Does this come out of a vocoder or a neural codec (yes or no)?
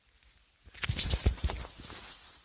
no